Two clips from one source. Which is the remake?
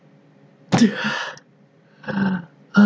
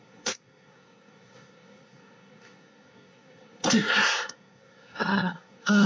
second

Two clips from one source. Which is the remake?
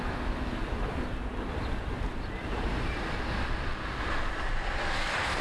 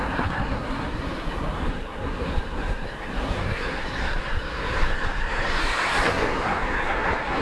second